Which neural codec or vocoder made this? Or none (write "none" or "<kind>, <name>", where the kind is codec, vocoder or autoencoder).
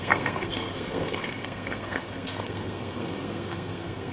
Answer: codec, SNAC